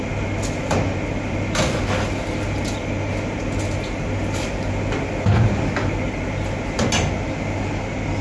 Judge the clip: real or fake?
real